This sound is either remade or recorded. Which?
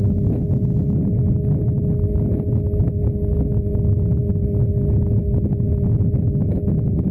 recorded